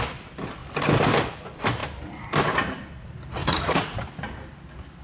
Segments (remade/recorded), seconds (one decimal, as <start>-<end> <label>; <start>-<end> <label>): 0.0-3.4 recorded; 3.4-4.0 remade; 4.0-5.0 recorded